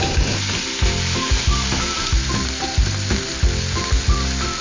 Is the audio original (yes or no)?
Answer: yes